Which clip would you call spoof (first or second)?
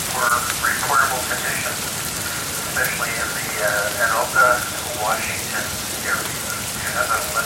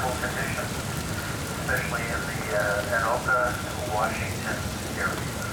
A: first